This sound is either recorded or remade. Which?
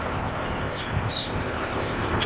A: remade